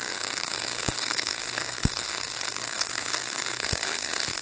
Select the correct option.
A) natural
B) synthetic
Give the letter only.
B